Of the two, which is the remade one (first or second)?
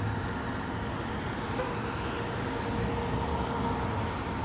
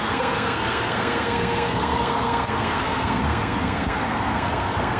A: second